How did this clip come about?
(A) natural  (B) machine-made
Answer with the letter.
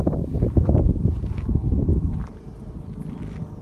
A